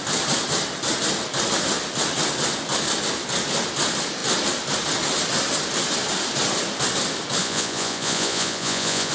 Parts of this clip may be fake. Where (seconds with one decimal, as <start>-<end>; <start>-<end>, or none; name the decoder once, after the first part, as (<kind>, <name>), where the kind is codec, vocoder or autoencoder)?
7.4-9.1 (vocoder, Vocos)